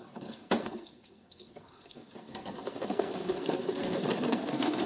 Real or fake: fake